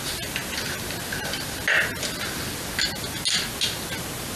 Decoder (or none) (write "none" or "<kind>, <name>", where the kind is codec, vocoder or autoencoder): none